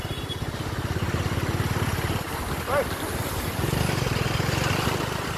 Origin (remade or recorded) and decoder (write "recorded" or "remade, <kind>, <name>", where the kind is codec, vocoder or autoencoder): recorded